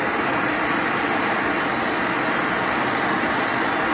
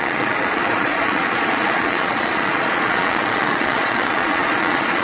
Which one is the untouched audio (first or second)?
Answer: first